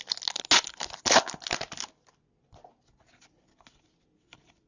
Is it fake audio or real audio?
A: real